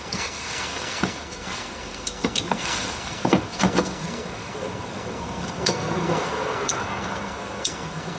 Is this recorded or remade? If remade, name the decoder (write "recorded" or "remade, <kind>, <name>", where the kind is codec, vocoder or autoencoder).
remade, codec, SNAC